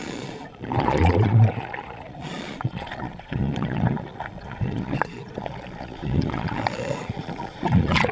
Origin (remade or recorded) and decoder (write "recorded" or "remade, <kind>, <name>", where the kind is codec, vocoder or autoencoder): remade, vocoder, Vocos